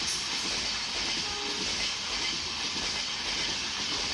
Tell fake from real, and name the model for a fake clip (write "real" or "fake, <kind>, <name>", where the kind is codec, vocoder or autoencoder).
real